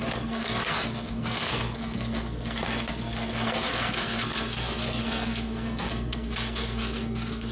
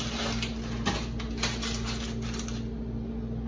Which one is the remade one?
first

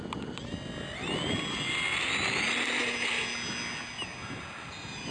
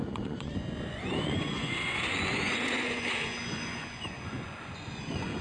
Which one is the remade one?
second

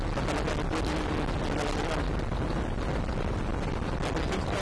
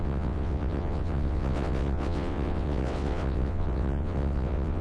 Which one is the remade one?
second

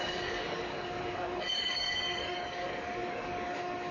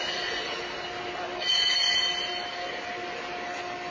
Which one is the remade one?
first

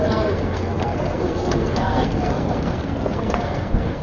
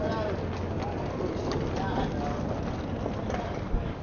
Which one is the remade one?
first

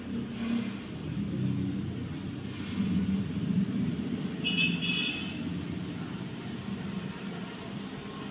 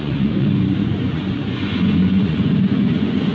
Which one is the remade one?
second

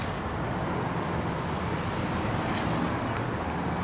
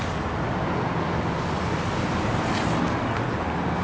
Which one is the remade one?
first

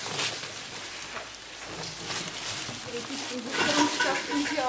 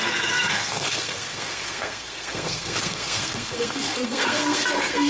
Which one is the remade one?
second